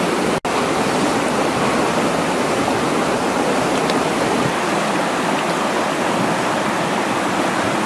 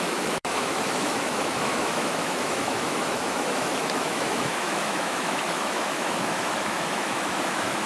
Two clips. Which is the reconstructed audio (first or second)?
second